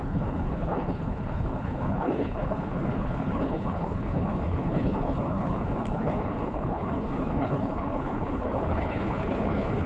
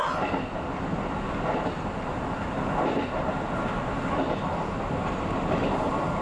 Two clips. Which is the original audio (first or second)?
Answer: second